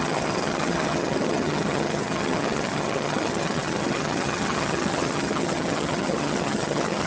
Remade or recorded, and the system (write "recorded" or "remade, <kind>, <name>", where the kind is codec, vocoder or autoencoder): remade, vocoder, HiFi-GAN